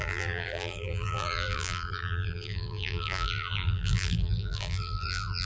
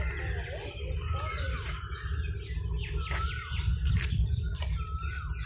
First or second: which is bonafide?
second